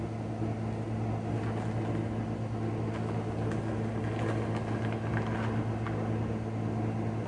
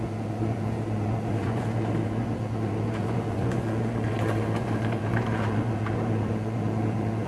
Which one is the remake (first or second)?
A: second